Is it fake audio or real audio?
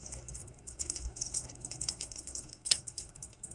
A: fake